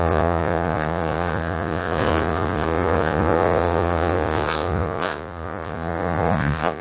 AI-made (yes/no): yes